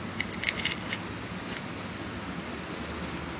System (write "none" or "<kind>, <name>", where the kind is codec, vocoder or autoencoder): none